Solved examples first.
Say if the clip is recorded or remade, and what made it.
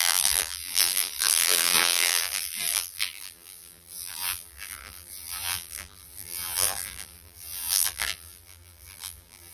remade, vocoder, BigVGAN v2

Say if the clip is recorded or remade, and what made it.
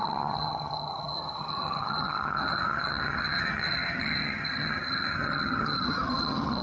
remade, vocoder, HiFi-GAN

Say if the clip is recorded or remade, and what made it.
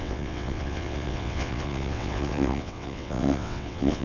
remade, vocoder, WaveNeXt